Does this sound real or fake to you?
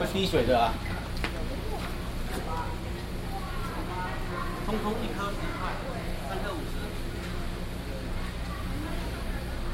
real